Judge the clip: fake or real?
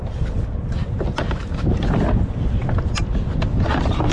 real